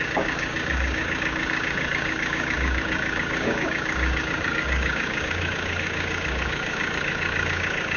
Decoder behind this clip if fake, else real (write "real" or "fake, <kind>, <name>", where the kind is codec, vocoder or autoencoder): fake, codec, DAC